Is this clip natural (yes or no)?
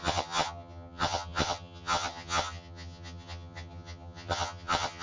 no